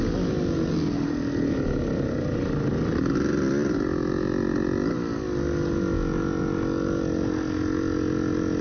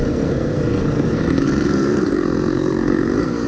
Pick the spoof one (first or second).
second